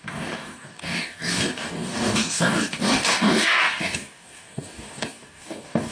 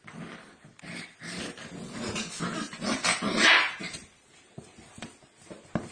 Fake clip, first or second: first